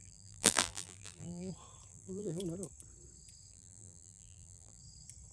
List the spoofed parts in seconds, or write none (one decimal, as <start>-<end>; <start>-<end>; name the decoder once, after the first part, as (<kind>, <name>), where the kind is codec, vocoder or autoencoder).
0.0-1.5 (vocoder, BigVGAN v2); 1.9-2.4; 3.5-4.8

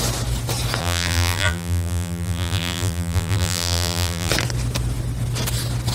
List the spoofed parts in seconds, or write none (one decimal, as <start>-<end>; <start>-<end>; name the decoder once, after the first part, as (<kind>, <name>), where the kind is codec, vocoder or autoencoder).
0.8-4.3 (vocoder, BigVGAN v2)

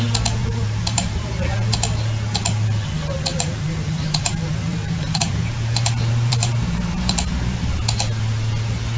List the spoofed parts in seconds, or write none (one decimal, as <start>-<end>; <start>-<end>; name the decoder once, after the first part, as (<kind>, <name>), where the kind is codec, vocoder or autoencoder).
0.4-1.5 (vocoder, BigVGAN v2); 3.3-7.6